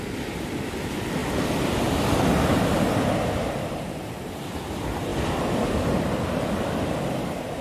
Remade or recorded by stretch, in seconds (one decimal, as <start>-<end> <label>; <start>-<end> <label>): 0.0-7.6 recorded